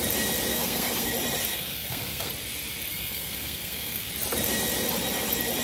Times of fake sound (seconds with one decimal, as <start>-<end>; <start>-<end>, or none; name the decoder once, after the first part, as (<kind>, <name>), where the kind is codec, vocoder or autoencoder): 0.5-1.1 (codec, SNAC); 1.5-2.3; 2.9-4.1